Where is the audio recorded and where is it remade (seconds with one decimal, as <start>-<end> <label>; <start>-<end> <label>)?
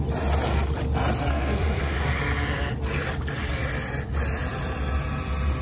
0.0-1.3 recorded; 1.3-2.2 remade; 2.2-5.6 recorded